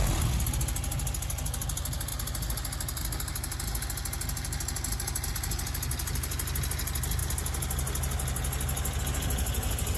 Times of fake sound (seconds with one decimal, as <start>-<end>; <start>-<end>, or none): none